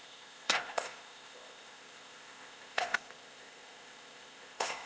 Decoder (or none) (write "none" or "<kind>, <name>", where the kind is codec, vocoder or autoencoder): codec, ZipCodec